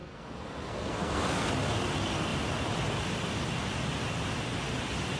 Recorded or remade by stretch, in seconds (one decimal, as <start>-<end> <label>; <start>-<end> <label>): 0.0-1.5 remade; 1.5-5.2 recorded